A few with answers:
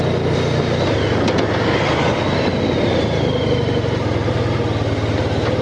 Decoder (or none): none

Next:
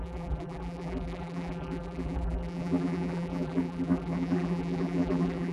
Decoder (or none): vocoder, BigVGAN v2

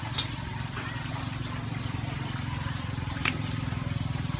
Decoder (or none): none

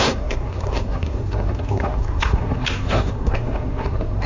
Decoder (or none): codec, SNAC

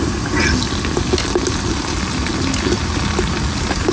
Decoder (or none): none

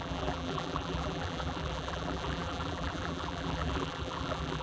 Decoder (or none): vocoder, BigVGAN v2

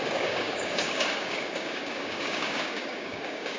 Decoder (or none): codec, DAC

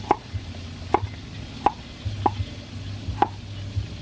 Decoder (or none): none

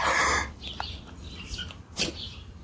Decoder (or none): none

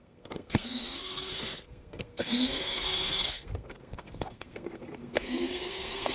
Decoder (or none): codec, SNAC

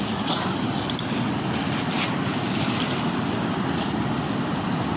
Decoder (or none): none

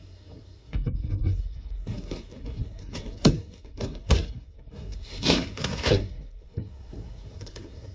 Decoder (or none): codec, SNAC